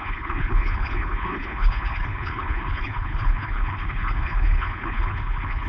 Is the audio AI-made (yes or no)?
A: yes